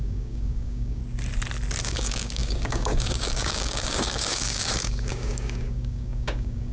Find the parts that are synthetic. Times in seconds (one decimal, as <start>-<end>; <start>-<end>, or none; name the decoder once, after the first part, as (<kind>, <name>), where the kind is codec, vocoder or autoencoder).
0.0-1.0 (codec, DAC); 1.8-6.7